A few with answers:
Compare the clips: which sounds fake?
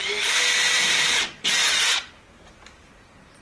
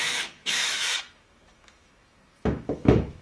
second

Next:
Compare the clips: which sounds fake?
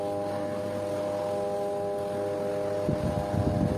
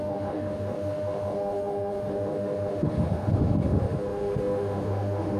second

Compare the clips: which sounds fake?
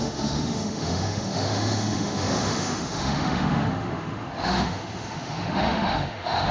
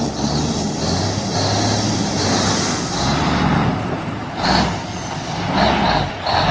first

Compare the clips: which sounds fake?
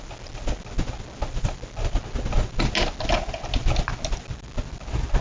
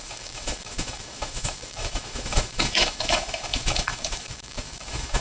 second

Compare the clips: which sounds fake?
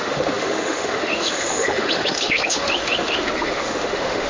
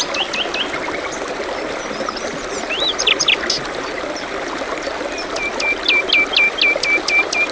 first